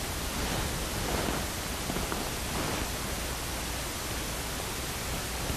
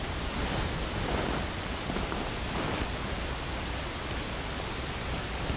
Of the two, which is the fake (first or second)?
second